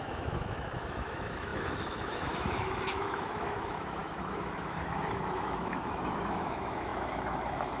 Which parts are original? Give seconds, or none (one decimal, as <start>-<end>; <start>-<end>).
none